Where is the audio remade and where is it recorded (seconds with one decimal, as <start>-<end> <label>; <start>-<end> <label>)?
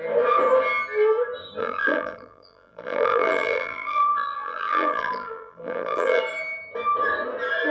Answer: 0.0-1.6 recorded; 1.6-6.2 remade; 6.2-7.7 recorded